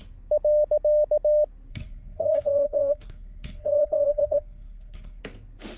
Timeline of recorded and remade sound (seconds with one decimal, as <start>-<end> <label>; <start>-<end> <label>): 0.0-1.7 recorded; 1.7-5.2 remade; 5.2-5.8 recorded